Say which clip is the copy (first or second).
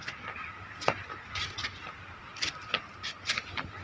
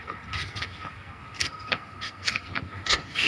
second